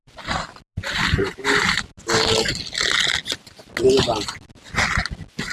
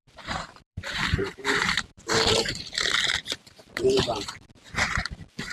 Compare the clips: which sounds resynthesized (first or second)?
second